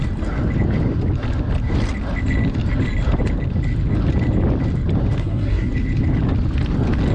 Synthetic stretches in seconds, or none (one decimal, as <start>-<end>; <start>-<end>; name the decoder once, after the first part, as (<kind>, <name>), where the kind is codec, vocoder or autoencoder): 5.2-5.7 (codec, SNAC)